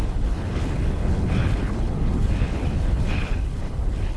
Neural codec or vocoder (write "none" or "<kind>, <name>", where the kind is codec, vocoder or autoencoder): codec, HILCodec